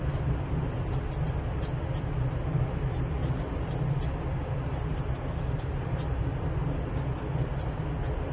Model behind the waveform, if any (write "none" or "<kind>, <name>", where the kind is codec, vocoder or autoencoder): none